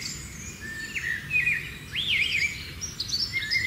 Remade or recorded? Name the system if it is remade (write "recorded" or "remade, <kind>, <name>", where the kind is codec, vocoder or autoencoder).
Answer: recorded